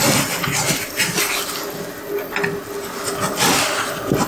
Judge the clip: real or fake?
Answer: real